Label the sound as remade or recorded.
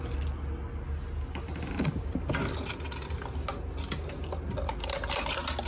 recorded